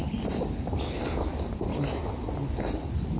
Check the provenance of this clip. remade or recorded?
recorded